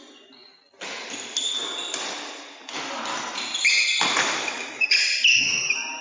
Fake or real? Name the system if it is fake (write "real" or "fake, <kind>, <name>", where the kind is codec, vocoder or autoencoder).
real